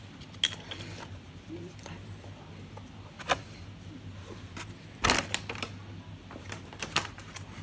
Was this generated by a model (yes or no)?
no